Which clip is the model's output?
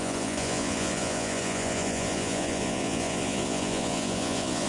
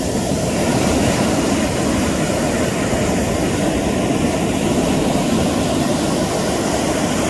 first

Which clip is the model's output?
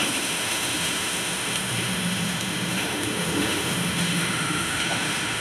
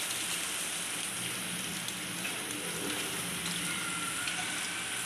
first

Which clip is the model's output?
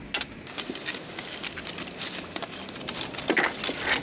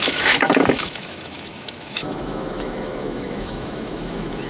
second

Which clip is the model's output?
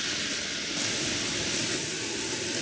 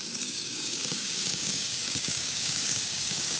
second